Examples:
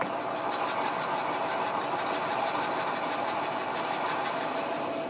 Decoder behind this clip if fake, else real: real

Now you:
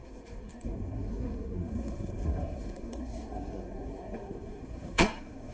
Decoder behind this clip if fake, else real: fake, codec, SNAC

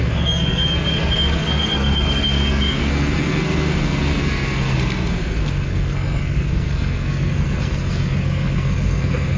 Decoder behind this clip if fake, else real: fake, codec, SNAC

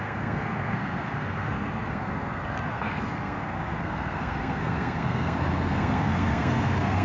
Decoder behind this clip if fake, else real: fake, codec, SNAC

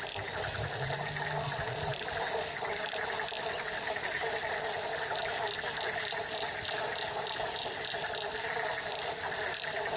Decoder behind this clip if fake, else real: real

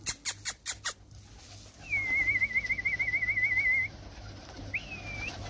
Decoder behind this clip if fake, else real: real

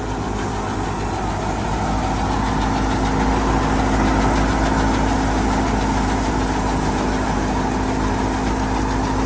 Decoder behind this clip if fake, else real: real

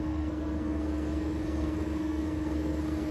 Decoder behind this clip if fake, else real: fake, codec, SNAC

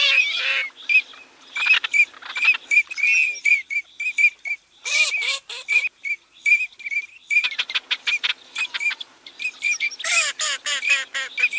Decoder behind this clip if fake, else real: real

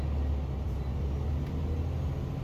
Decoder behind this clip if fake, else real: real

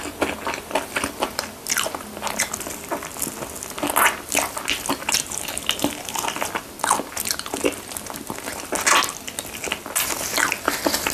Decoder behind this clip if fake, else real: real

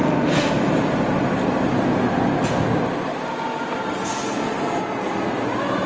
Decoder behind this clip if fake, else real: real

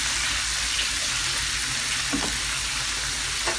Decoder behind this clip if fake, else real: real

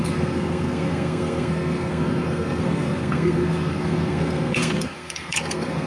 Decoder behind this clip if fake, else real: fake, codec, SNAC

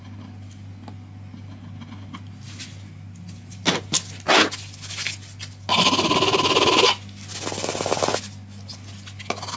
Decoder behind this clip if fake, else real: real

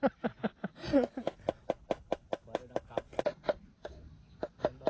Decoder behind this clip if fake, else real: real